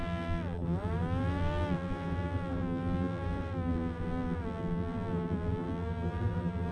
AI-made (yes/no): yes